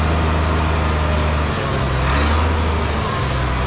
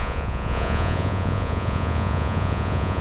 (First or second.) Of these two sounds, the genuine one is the first